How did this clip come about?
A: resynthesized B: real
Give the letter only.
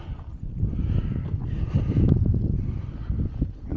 B